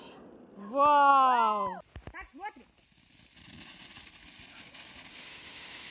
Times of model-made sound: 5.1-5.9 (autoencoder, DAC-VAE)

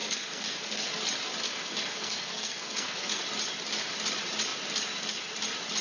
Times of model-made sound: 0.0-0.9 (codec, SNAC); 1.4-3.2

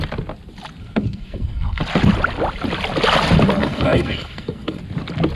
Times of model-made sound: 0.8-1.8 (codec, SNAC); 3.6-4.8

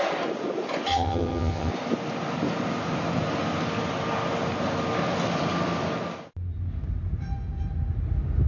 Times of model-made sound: 0.9-1.7 (vocoder, HiFi-GAN)